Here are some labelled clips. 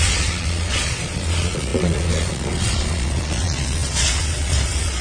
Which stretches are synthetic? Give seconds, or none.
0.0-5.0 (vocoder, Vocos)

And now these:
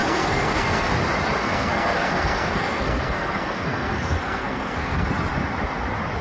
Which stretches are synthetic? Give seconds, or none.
0.0-0.9 (codec, SNAC); 1.4-5.1

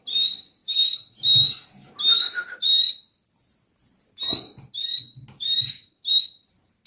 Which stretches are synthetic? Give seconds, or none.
none

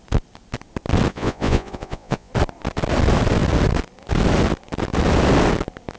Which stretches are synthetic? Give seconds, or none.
1.1-2.3 (vocoder, Vocos)

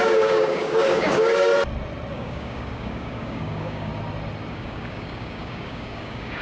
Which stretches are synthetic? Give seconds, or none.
0.0-1.5 (codec, DAC); 2.1-3.9; 4.5-6.4